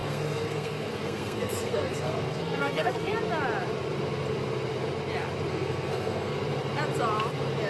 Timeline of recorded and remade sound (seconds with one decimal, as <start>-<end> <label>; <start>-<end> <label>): 0.0-3.1 remade; 3.1-5.5 recorded; 5.5-6.4 remade; 6.4-7.7 recorded